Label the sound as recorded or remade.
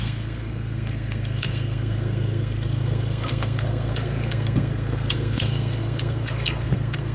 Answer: remade